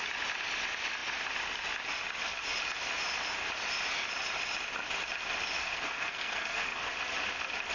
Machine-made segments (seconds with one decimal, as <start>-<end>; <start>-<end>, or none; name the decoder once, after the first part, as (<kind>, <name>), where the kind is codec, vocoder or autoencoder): 5.6-6.9 (codec, SNAC)